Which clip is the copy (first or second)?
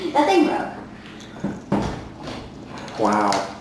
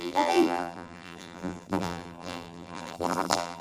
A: second